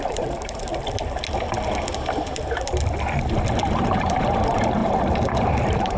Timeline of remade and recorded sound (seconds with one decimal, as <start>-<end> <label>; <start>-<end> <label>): 0.0-0.7 remade; 0.7-3.7 recorded; 3.7-6.0 remade